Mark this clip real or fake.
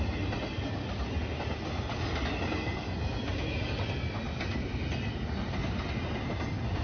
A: real